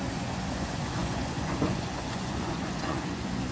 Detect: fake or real fake